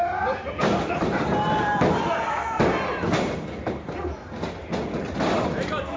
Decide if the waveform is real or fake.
real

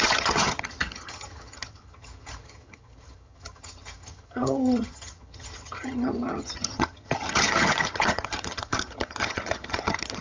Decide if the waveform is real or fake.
fake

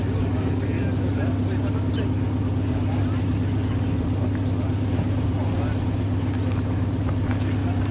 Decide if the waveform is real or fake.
real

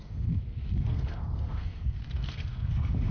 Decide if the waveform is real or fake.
fake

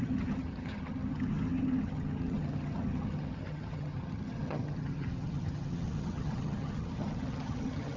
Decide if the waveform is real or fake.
fake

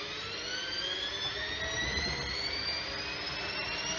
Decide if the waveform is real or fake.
real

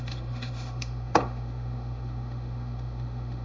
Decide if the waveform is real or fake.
fake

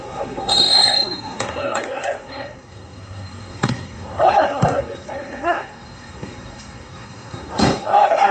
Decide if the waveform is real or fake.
fake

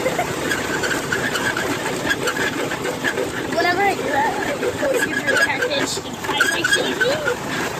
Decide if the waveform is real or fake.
fake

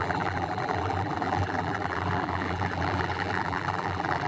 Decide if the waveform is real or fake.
fake